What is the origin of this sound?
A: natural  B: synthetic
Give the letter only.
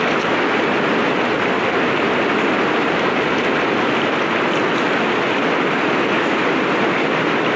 A